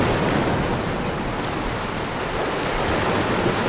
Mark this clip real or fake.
real